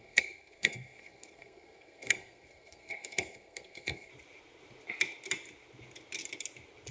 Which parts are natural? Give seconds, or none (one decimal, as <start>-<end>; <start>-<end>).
4.1-6.9